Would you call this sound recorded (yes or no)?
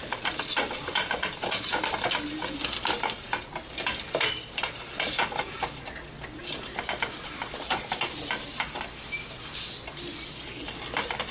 yes